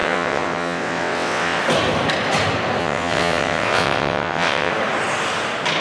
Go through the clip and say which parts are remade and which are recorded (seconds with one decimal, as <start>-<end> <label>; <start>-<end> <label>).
0.0-1.6 remade; 1.6-2.8 recorded; 2.8-4.7 remade; 4.7-5.8 recorded